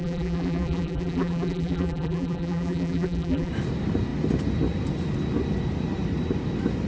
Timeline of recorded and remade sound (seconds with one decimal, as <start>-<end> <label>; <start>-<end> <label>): 0.0-3.5 remade; 3.5-6.9 recorded